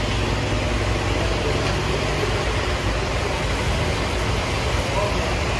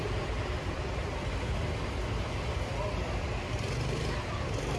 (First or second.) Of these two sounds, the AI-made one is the second